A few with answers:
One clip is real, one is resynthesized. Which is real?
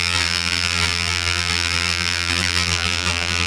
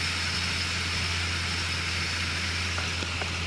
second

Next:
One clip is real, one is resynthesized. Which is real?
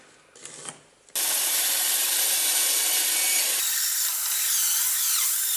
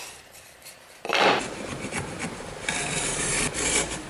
first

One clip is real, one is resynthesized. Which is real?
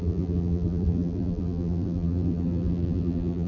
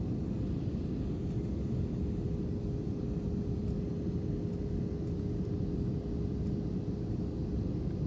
second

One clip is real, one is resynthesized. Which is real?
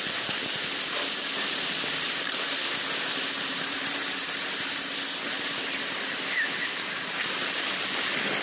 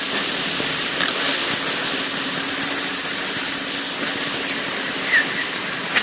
second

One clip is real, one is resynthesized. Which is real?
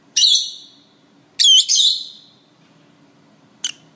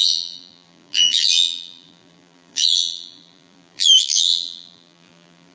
first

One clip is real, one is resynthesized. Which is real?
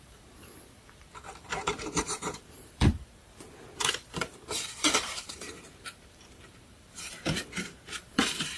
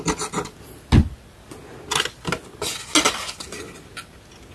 second